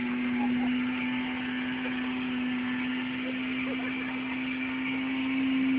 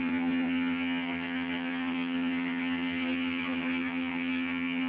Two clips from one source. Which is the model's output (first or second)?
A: second